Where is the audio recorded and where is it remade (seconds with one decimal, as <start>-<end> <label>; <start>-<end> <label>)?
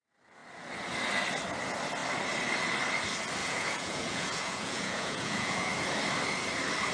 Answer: 0.0-3.4 recorded; 3.4-5.7 remade; 5.7-6.9 recorded